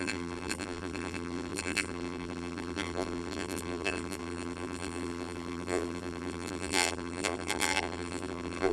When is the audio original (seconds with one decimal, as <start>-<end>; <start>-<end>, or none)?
none